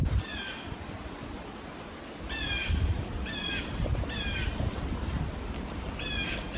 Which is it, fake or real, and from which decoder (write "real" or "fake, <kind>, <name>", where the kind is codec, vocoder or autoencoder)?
real